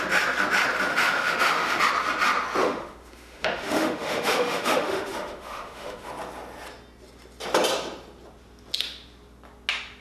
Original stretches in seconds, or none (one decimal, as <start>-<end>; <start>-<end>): 0.0-0.9; 1.8-2.6; 6.1-10.0